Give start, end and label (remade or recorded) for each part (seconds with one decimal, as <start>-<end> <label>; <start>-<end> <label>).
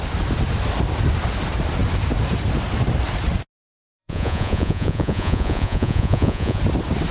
0.0-4.0 recorded; 4.0-6.6 remade; 6.6-7.1 recorded